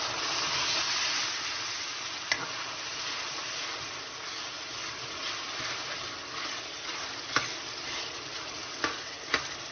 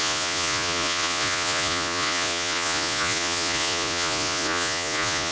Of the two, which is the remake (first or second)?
second